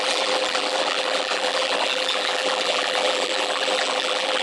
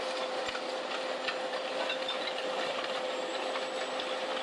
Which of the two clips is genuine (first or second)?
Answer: second